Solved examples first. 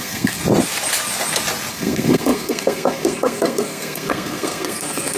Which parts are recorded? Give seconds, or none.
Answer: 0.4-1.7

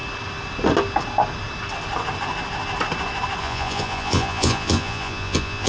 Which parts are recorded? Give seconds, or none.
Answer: 0.0-3.4

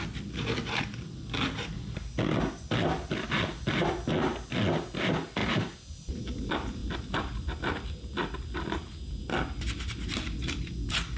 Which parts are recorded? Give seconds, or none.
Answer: 0.0-11.2

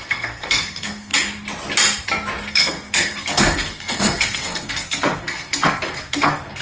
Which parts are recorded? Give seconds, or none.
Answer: 1.1-2.5

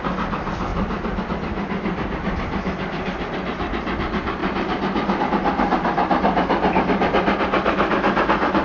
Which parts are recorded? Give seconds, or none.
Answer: 0.0-8.6

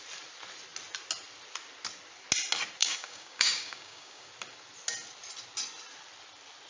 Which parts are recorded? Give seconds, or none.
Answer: 0.0-2.8; 4.3-6.7

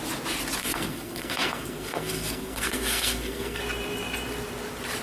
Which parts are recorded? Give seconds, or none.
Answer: 0.0-0.6; 3.6-5.0